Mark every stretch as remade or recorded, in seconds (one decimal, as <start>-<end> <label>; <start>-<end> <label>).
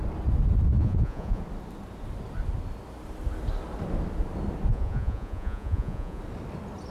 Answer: 0.0-0.8 recorded; 0.8-1.4 remade; 1.4-4.7 recorded; 4.7-6.2 remade; 6.2-6.9 recorded